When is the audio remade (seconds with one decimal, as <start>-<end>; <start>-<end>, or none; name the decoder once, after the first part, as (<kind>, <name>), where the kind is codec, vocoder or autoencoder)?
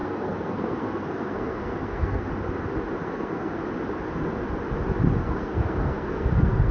0.0-2.3 (codec, SNAC); 3.0-3.6; 5.2-6.7